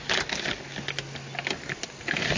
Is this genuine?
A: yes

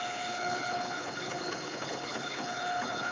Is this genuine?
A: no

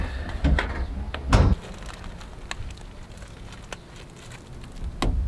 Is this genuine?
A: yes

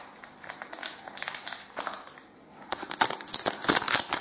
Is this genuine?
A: no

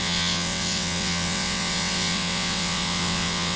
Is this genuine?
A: no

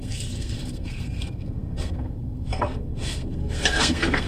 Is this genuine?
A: no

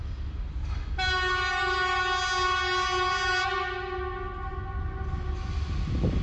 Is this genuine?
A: yes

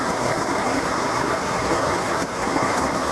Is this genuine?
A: no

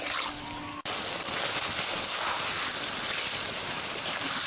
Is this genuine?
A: yes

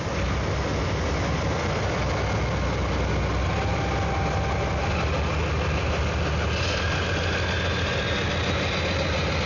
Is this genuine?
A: yes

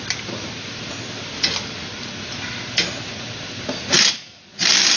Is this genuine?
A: yes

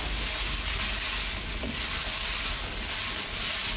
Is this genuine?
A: yes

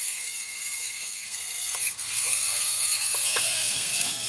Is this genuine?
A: no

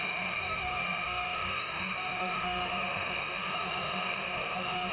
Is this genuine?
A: no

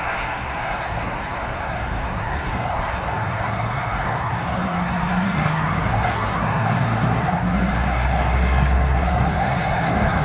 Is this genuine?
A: no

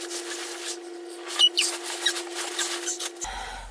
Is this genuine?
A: yes